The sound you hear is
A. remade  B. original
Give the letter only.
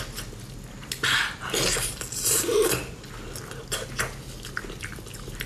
B